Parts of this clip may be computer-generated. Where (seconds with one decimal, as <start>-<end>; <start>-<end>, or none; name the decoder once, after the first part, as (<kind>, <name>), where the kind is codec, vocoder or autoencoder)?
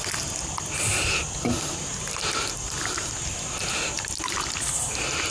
none